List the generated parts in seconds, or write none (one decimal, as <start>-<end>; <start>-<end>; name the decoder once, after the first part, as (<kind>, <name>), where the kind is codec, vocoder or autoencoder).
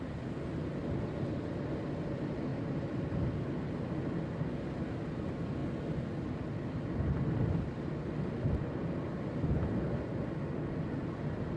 2.5-3.2 (vocoder, BigVGAN v2); 9.1-9.7